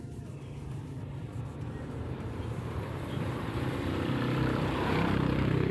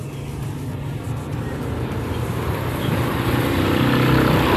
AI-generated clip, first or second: first